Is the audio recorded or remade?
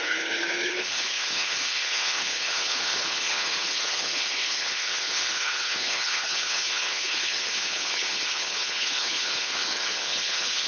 remade